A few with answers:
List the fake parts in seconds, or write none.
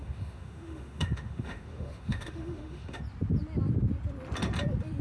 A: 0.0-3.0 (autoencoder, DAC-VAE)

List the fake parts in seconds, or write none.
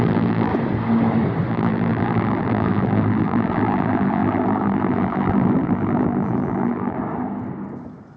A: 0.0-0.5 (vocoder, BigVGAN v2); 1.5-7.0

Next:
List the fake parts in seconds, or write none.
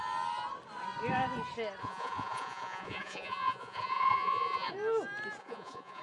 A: 1.8-4.7 (vocoder, Vocos); 5.4-6.0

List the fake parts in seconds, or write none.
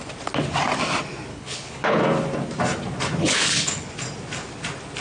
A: 1.3-2.0 (codec, HILCodec); 3.2-3.9